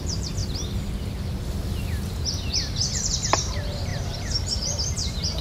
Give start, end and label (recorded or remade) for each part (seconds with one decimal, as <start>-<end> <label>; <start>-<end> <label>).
0.0-0.4 remade; 0.4-2.9 recorded; 2.9-5.4 remade